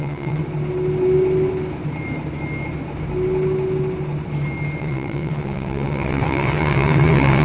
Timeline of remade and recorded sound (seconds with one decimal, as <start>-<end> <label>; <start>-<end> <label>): 0.0-0.4 remade; 0.4-4.8 recorded; 4.8-7.4 remade